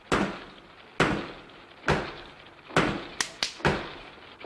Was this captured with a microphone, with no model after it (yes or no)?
yes